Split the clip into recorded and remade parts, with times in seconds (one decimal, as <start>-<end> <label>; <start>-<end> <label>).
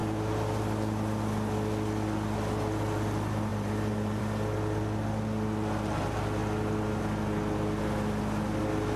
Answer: 0.0-3.5 recorded; 3.5-4.2 remade; 4.2-9.0 recorded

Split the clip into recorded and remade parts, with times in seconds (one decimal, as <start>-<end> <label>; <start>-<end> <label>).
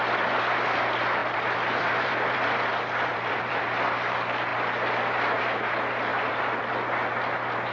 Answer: 0.0-1.2 recorded; 1.2-3.6 remade; 3.6-6.1 recorded; 6.1-6.7 remade; 6.7-7.7 recorded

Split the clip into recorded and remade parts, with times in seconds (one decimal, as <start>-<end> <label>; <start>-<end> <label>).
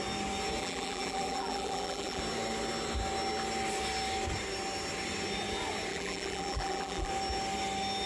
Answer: 0.0-0.6 recorded; 0.6-2.2 remade; 2.2-5.9 recorded; 5.9-7.1 remade; 7.1-8.1 recorded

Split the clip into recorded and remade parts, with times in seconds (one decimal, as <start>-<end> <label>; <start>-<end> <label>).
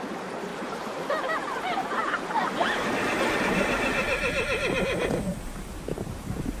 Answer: 0.0-0.5 recorded; 0.5-3.2 remade; 3.2-5.3 recorded; 5.3-6.6 remade